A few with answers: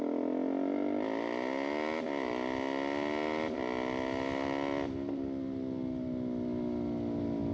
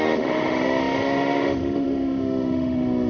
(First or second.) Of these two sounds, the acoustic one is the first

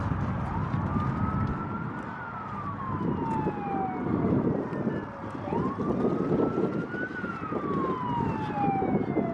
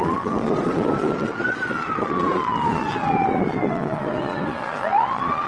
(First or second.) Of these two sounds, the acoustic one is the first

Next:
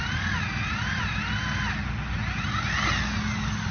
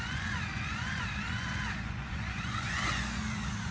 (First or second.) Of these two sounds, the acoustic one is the first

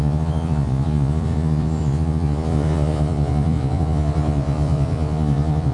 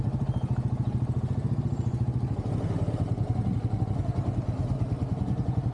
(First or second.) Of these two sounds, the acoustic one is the second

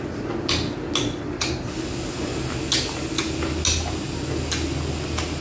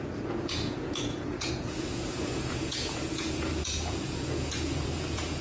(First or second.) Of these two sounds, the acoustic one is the first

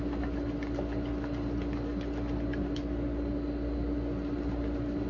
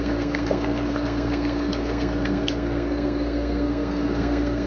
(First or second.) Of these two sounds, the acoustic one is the first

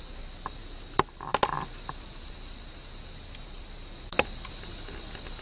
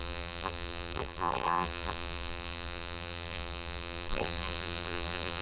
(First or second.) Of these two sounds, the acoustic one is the first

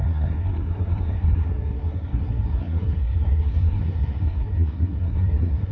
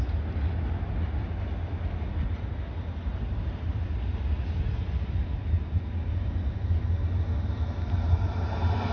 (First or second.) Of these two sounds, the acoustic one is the second